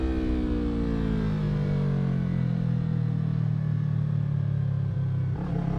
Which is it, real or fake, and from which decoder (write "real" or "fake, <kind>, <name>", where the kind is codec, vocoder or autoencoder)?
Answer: real